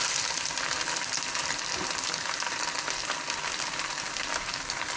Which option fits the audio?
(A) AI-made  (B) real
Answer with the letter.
B